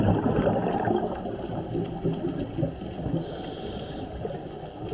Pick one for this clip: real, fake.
real